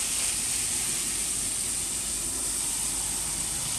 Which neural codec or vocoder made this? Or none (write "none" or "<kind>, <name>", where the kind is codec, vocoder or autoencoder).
none